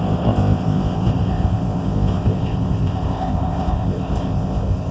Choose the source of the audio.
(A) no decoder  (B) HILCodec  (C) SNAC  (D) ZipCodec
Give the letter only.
D